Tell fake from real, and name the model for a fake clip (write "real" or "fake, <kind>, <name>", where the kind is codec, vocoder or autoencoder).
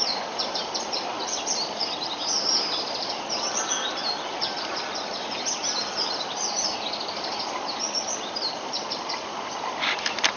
fake, vocoder, BigVGAN v2